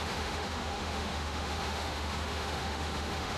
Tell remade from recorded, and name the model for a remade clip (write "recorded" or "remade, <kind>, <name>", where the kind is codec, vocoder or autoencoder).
remade, autoencoder, DAC-VAE